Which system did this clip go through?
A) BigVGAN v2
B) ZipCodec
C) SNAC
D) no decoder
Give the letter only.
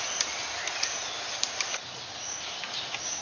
D